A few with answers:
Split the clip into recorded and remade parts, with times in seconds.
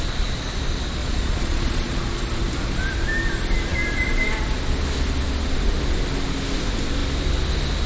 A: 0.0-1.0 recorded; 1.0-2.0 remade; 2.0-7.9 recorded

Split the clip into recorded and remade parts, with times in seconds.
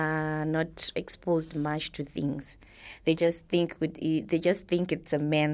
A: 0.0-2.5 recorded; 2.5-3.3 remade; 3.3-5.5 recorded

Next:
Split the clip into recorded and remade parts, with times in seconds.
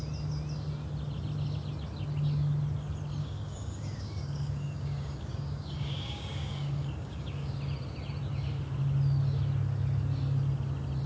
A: 0.0-3.2 recorded; 3.2-7.5 remade; 7.5-11.1 recorded